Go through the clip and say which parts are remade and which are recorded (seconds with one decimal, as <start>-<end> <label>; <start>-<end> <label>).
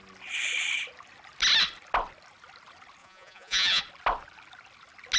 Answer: 0.0-3.0 recorded; 3.0-3.8 remade; 3.8-5.2 recorded